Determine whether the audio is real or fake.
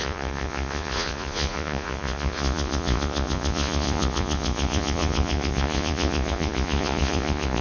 fake